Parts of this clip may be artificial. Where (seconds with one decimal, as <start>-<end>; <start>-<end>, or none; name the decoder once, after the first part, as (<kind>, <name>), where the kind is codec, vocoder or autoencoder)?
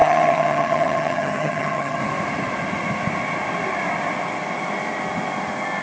0.0-2.0 (vocoder, HiFi-GAN)